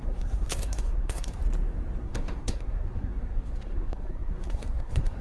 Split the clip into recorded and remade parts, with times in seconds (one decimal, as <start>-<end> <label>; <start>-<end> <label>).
0.0-1.4 remade; 1.4-2.0 recorded; 2.0-5.2 remade